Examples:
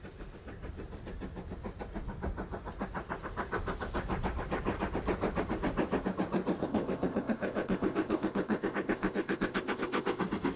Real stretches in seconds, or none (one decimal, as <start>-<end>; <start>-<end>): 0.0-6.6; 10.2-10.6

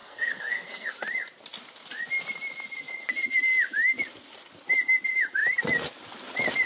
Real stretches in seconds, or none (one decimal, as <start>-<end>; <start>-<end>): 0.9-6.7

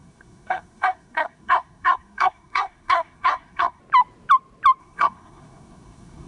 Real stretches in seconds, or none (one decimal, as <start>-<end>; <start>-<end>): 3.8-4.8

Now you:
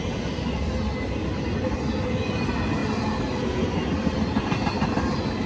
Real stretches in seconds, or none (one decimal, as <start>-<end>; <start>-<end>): 0.0-5.5